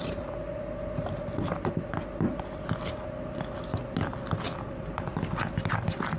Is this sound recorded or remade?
recorded